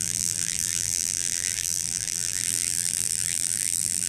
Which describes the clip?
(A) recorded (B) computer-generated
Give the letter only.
B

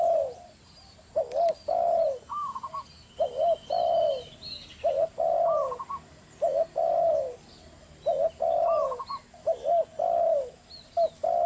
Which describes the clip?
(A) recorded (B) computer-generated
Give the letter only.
A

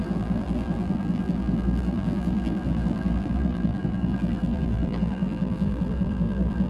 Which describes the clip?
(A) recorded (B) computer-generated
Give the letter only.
B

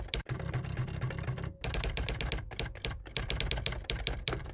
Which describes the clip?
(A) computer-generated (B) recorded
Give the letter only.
B